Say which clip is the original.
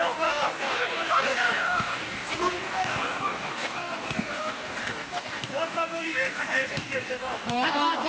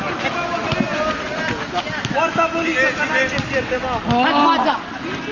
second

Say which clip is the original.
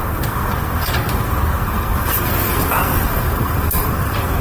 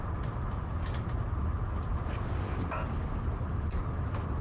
second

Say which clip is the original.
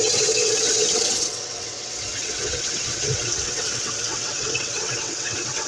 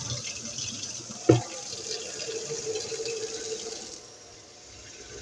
second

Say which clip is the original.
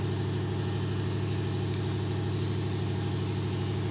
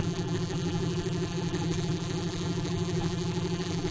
first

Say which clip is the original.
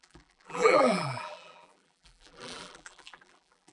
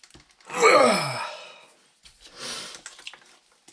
second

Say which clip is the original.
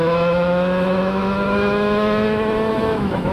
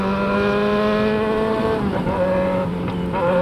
second